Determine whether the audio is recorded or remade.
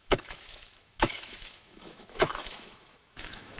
remade